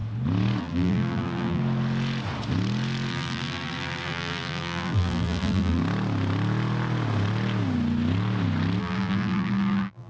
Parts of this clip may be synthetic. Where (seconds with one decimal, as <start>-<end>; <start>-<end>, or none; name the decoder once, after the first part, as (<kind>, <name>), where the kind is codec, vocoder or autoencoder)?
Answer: 0.6-1.6 (vocoder, BigVGAN v2); 3.1-5.8; 8.8-10.1